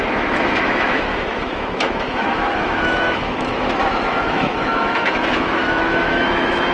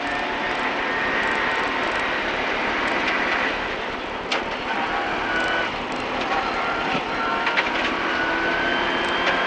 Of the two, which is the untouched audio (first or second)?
second